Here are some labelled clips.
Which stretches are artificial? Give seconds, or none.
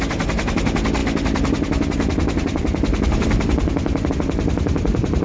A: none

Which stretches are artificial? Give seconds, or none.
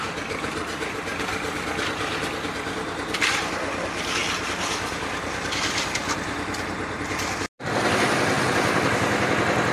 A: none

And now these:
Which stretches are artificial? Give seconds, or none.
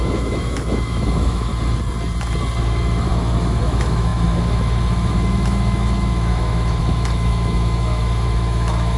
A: 0.0-1.5 (autoencoder, DAC-VAE); 2.6-9.0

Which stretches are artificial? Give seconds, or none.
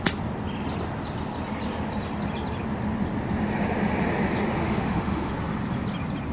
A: 4.6-5.3 (autoencoder, DAC-VAE)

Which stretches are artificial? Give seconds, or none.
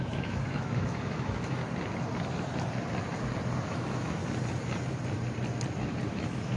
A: 0.0-1.6 (autoencoder, DAC-VAE); 3.6-4.2; 6.1-6.6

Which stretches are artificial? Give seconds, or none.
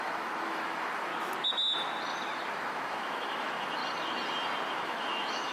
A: 0.0-1.1 (autoencoder, DAC-VAE); 2.5-3.8; 4.7-5.5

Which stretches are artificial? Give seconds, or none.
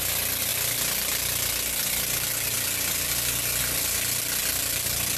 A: none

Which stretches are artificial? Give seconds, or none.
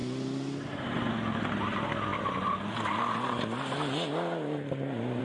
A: none